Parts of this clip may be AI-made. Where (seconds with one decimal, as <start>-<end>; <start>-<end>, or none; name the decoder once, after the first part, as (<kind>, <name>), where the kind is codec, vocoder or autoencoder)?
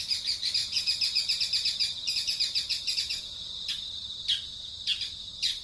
0.6-3.7 (vocoder, Vocos)